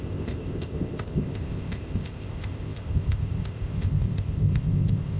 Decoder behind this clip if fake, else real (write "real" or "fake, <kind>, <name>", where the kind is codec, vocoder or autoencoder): fake, codec, ZipCodec